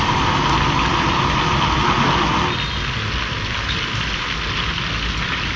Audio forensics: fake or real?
real